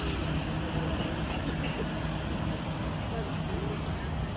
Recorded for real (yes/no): yes